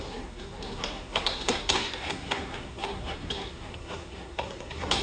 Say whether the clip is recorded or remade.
remade